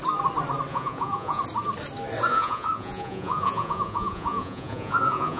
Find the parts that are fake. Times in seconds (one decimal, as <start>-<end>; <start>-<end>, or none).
0.7-1.4; 2.3-5.4